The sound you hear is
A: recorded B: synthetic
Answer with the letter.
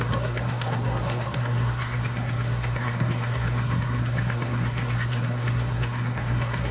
B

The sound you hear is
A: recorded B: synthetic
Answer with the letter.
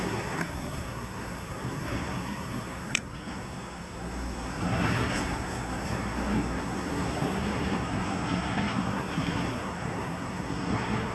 B